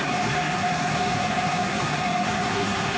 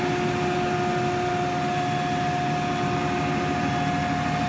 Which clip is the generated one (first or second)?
first